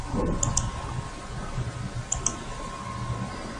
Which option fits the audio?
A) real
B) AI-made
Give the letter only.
A